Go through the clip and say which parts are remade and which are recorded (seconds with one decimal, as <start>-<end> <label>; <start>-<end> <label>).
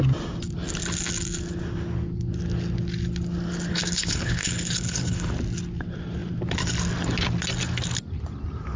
0.0-3.7 recorded; 3.7-5.3 remade; 5.3-8.8 recorded